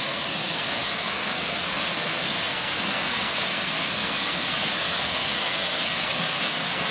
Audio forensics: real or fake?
fake